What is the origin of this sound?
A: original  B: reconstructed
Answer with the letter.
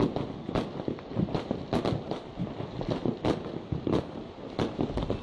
A